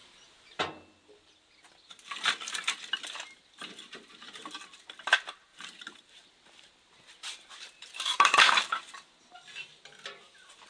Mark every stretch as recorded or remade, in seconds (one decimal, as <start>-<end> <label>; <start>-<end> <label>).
0.0-0.6 remade; 0.6-5.5 recorded; 5.5-8.9 remade; 8.9-10.7 recorded